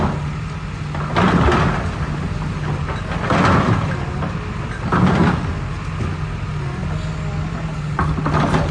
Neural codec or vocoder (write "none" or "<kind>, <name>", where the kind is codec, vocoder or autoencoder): none